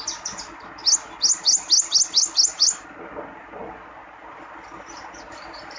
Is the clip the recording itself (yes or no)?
yes